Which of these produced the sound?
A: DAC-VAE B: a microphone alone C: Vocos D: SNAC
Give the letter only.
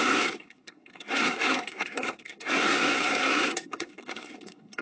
D